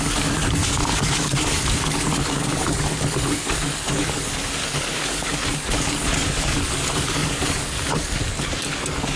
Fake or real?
fake